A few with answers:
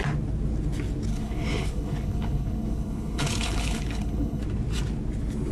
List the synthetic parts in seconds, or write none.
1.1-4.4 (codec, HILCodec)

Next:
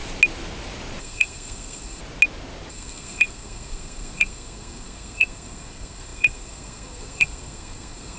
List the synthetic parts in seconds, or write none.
1.0-2.0 (codec, SNAC); 2.7-8.2

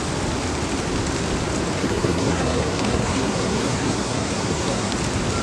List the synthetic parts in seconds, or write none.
1.8-4.9 (codec, SNAC)

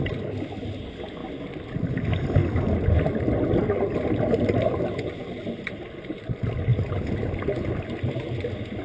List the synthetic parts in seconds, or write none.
none

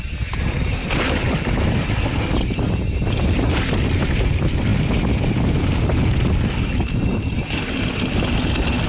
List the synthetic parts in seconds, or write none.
none

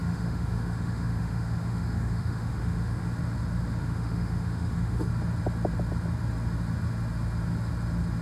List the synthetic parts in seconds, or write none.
0.0-3.1 (autoencoder, DAC-VAE); 3.8-5.1

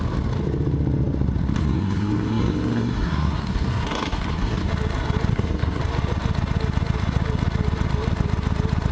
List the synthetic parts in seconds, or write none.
1.6-4.7 (codec, SNAC); 5.3-5.8